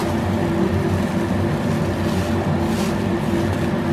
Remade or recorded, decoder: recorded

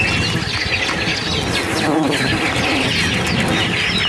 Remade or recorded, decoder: recorded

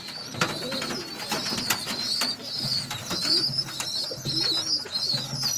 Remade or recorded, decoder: recorded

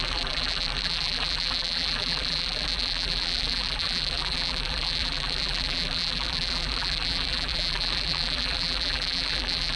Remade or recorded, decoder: remade, vocoder, BigVGAN v2